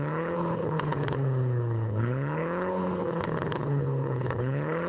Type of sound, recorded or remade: remade